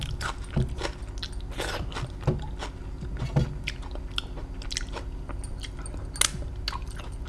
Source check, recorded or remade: recorded